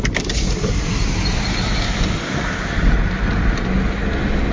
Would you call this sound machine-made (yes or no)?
no